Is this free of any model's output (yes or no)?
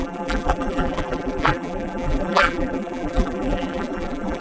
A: no